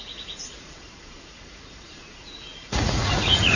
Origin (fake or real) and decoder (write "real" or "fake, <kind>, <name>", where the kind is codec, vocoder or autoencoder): fake, vocoder, Vocos